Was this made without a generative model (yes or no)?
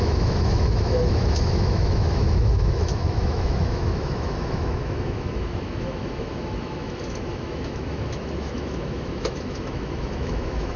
no